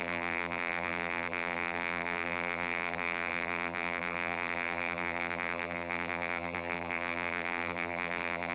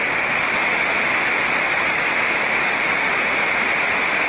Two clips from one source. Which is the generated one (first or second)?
first